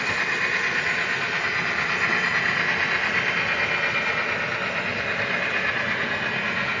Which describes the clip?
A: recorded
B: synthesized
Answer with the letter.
A